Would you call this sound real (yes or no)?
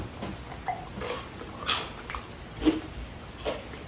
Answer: yes